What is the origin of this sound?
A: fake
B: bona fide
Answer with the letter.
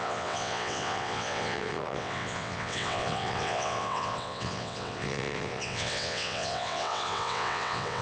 A